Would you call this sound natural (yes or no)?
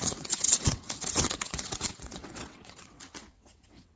no